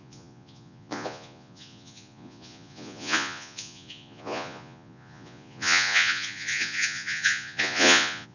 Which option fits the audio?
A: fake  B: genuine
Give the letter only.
A